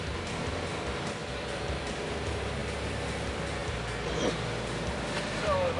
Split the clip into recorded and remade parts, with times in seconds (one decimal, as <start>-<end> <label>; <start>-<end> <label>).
0.0-1.2 recorded; 1.2-1.8 remade; 1.8-2.6 recorded; 2.6-3.1 remade; 3.1-3.6 recorded; 3.6-4.3 remade; 4.3-5.8 recorded